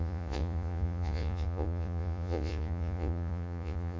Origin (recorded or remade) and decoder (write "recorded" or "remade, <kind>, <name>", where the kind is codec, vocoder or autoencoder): remade, vocoder, Vocos